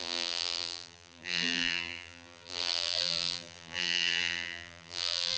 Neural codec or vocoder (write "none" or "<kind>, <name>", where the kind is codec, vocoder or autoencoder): vocoder, BigVGAN v2